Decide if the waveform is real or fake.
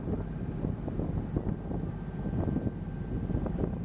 real